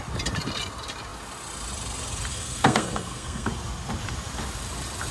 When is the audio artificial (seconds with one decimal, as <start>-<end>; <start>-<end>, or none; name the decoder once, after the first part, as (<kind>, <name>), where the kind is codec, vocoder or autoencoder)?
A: 2.3-3.5 (codec, SNAC)